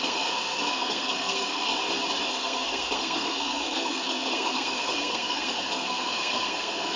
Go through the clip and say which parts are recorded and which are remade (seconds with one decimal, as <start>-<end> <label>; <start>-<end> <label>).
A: 0.0-1.7 remade; 1.7-2.3 recorded; 2.3-7.0 remade